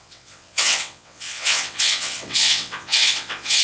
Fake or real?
fake